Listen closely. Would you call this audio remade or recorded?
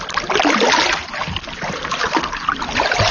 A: recorded